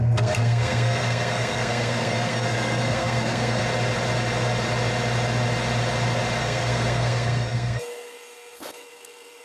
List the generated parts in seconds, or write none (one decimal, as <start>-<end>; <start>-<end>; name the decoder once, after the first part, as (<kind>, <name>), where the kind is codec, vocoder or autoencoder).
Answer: 0.0-3.6 (codec, SNAC); 6.4-9.4